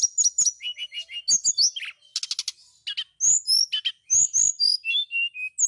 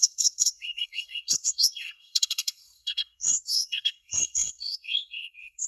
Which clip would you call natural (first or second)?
first